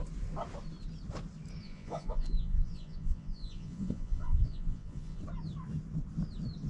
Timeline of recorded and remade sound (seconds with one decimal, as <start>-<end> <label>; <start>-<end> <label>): 0.0-1.6 recorded; 1.6-5.2 remade; 5.2-6.7 recorded